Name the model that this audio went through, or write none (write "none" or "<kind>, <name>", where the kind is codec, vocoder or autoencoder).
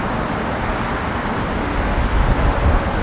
none